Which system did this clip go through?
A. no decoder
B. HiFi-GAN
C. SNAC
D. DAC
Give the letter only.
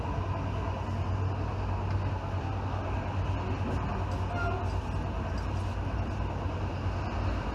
A